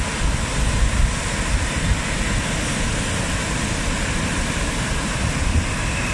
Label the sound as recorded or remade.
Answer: recorded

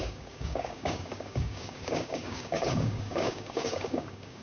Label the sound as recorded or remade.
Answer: remade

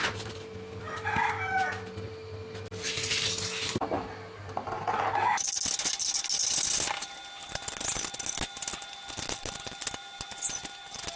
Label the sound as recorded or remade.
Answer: recorded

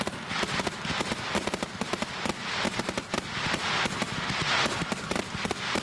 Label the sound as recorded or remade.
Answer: recorded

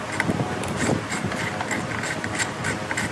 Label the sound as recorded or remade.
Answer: recorded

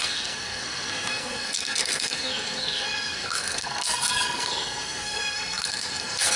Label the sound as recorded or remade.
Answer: remade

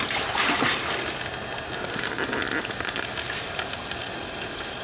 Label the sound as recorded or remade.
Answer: recorded